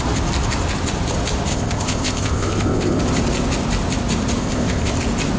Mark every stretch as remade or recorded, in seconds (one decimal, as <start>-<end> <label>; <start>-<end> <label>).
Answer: 0.0-1.5 recorded; 1.5-3.0 remade; 3.0-4.4 recorded; 4.4-4.9 remade; 4.9-5.4 recorded